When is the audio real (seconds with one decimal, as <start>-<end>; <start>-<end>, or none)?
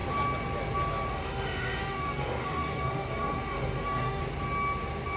0.0-1.1; 4.2-5.2